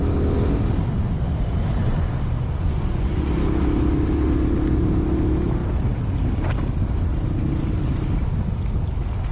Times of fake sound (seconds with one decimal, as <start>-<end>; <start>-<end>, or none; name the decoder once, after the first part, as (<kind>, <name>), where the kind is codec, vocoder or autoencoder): 1.8-3.3 (vocoder, Vocos)